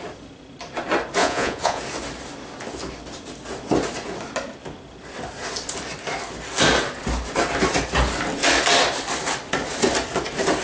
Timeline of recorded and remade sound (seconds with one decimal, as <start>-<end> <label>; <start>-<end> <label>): 0.0-1.2 recorded; 1.2-1.8 remade; 1.8-10.6 recorded